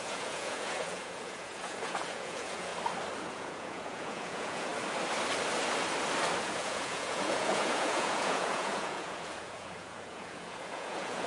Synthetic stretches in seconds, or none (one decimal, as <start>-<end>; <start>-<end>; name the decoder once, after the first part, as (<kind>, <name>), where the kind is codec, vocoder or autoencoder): 0.0-2.7 (vocoder, Vocos); 3.3-4.7; 6.4-11.3